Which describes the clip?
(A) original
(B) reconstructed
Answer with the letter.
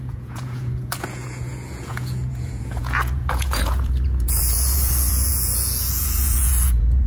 B